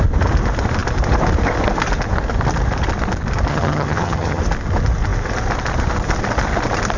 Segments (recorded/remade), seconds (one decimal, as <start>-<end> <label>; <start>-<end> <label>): 0.0-3.5 recorded; 3.5-4.4 remade; 4.4-7.0 recorded